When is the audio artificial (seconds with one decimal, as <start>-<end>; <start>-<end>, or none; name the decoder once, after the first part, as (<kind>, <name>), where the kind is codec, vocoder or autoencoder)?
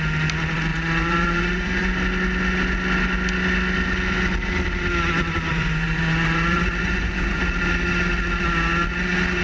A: 0.7-1.9 (vocoder, Vocos); 5.5-7.4